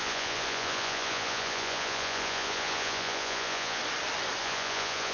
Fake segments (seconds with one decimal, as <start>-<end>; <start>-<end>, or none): 0.0-3.8; 4.4-5.1

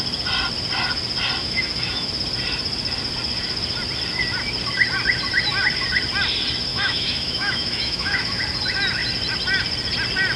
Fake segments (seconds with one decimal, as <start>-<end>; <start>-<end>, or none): 1.4-2.1; 6.7-8.4

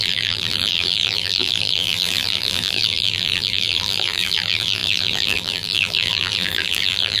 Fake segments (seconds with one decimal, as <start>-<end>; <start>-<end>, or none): 0.0-7.2

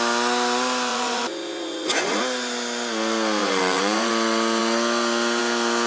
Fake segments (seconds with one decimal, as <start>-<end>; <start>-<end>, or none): 0.9-2.2; 3.4-4.1

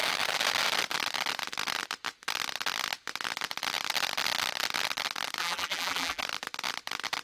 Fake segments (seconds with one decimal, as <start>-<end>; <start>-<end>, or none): 5.4-6.2

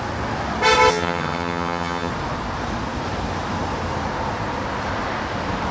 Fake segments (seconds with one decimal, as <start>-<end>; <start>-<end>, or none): 0.9-2.1

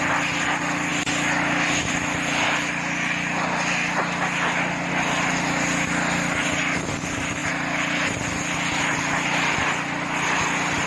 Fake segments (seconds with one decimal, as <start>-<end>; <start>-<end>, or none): none